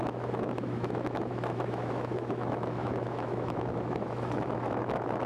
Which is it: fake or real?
fake